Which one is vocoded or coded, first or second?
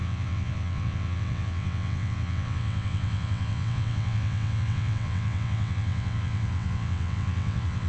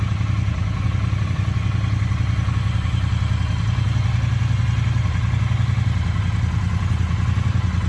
first